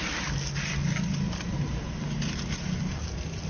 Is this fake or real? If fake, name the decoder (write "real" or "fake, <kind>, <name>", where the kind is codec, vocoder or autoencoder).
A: real